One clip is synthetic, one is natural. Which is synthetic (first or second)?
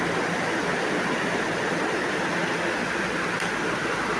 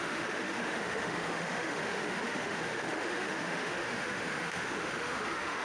second